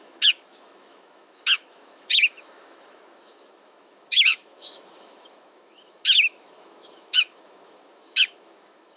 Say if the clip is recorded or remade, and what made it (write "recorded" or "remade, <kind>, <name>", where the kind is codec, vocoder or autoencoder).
remade, autoencoder, DAC-VAE